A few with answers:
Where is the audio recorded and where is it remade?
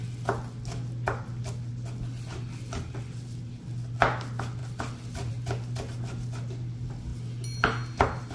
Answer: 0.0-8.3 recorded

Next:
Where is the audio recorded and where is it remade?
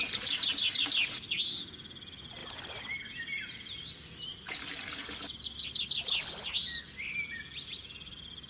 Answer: 0.0-8.5 recorded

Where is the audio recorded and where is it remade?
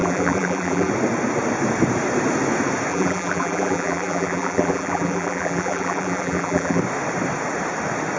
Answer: 0.0-0.9 remade; 0.9-2.9 recorded; 2.9-6.8 remade; 6.8-8.2 recorded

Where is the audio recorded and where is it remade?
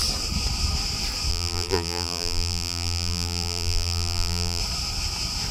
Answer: 0.0-1.3 recorded; 1.3-4.6 remade; 4.6-5.5 recorded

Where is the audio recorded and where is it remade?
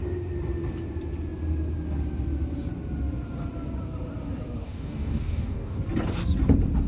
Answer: 0.0-4.6 recorded; 4.6-5.8 remade; 5.8-6.9 recorded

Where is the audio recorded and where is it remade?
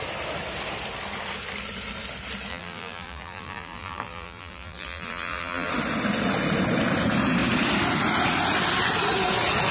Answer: 0.0-2.5 recorded; 2.5-5.7 remade; 5.7-9.7 recorded